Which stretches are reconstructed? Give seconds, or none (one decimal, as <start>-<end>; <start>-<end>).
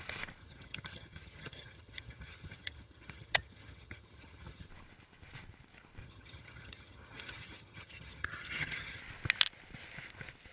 0.4-4.7; 6.0-9.0